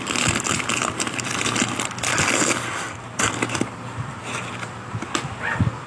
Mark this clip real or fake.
real